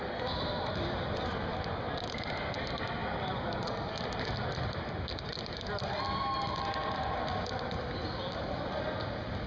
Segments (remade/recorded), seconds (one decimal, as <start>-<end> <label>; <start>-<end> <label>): 0.0-3.0 recorded; 3.0-5.1 remade; 5.1-9.5 recorded